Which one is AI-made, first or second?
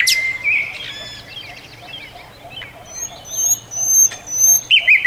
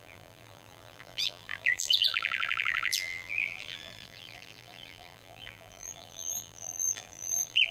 second